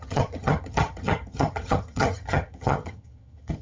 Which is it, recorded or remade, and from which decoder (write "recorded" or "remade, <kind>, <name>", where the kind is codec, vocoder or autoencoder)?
remade, vocoder, HiFi-GAN